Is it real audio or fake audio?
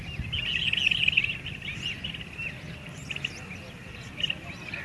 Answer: real